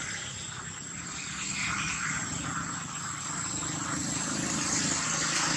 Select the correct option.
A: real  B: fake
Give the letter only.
A